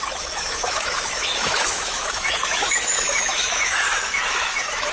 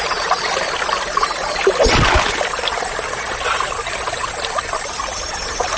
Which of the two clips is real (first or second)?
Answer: second